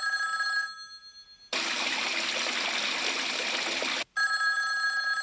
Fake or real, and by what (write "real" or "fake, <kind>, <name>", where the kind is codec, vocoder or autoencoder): real